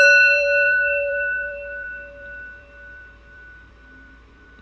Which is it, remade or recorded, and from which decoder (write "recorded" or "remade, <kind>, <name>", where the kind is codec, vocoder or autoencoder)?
remade, vocoder, BigVGAN v2